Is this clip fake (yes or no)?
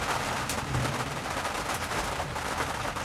no